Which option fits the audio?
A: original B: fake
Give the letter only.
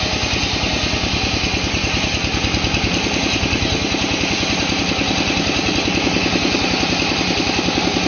A